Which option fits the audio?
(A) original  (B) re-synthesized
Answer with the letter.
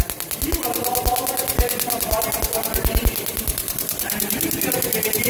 A